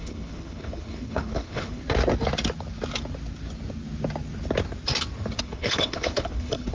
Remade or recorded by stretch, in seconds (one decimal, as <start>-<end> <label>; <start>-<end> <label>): 0.0-1.8 remade; 1.8-5.4 recorded; 5.4-6.7 remade